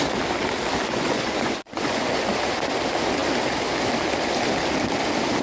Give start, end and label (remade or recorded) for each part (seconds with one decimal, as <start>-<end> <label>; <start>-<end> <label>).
0.0-0.8 recorded; 0.8-2.3 remade; 2.3-5.4 recorded